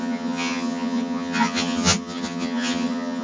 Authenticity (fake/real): fake